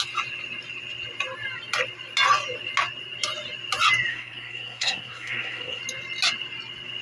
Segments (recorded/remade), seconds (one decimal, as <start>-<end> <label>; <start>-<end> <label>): 0.0-4.1 recorded; 4.1-5.8 remade; 5.8-7.0 recorded

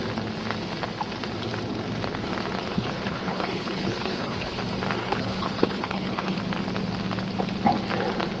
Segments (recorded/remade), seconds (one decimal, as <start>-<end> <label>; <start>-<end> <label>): 0.0-2.7 recorded; 2.7-4.6 remade; 4.6-5.0 recorded; 5.0-6.4 remade; 6.4-8.4 recorded

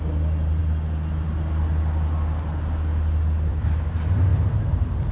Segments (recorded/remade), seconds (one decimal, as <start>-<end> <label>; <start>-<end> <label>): 0.0-0.6 remade; 0.6-3.5 recorded; 3.5-5.1 remade

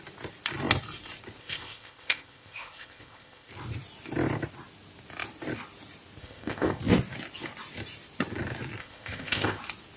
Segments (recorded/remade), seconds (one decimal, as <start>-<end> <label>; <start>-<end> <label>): 0.0-1.4 recorded; 1.4-3.5 remade; 3.5-6.2 recorded; 6.2-6.8 remade; 6.8-8.8 recorded; 8.8-9.6 remade; 9.6-10.0 recorded